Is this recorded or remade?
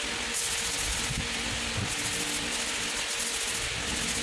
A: recorded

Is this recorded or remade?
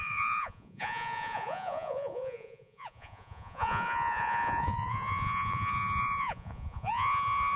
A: remade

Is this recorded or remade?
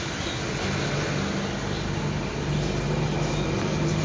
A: recorded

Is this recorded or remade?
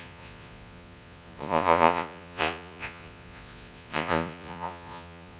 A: remade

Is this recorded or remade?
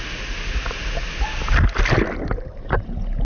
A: recorded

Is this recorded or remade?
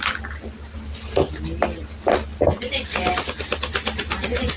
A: recorded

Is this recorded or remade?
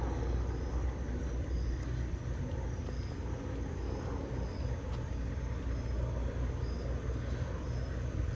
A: recorded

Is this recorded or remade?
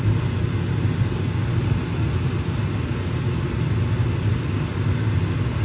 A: recorded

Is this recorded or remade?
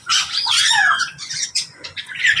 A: remade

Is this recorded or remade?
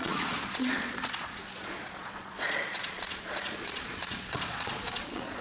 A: remade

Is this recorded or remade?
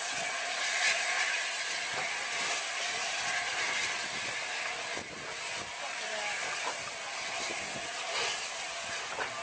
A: recorded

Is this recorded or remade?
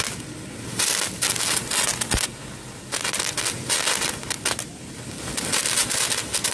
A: recorded